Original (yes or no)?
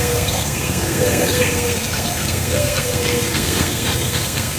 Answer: no